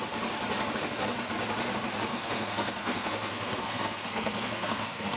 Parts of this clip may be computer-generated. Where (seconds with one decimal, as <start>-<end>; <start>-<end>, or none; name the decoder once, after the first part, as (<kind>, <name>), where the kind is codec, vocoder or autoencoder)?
2.1-5.2 (codec, SNAC)